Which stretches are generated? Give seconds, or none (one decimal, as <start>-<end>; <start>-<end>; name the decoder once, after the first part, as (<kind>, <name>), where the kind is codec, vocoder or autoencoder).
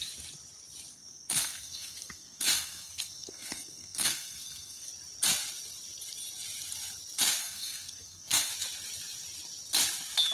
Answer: 0.9-4.9 (codec, SNAC); 7.4-8.5